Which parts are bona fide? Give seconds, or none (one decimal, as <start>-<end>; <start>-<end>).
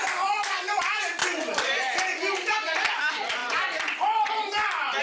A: 1.2-2.9